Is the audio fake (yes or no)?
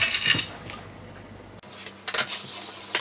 no